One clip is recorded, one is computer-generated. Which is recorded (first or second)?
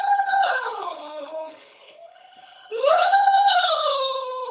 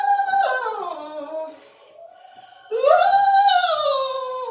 second